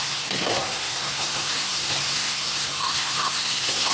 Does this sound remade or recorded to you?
remade